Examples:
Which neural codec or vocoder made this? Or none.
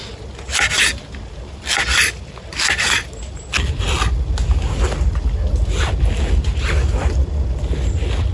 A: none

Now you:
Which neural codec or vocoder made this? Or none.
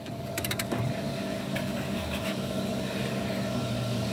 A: codec, DAC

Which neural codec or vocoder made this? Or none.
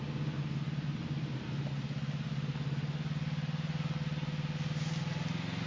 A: none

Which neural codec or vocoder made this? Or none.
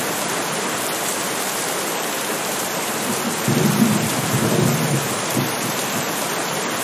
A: vocoder, BigVGAN v2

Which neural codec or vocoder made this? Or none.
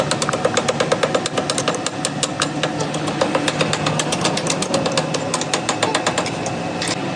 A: none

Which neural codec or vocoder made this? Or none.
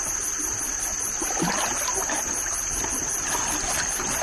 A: none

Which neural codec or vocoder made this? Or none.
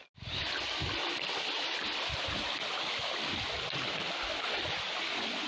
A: none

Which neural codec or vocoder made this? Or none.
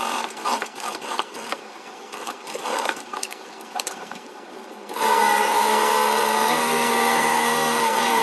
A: codec, SNAC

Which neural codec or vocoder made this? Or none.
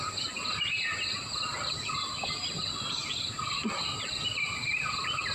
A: none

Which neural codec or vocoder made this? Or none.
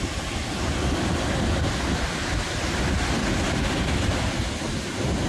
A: none